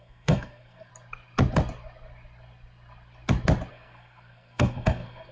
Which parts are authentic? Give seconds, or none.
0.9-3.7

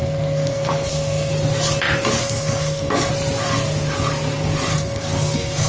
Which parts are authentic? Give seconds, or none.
1.3-2.2; 3.1-4.7

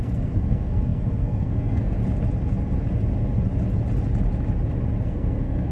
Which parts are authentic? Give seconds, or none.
2.0-5.0

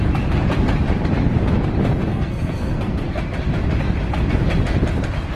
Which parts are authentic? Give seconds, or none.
0.0-2.1; 3.2-5.4

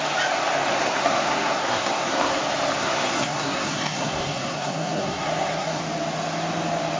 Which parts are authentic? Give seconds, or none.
0.0-0.8; 2.4-2.8; 5.8-7.0

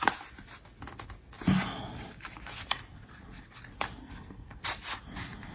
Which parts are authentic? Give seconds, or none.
0.0-4.0; 4.6-5.5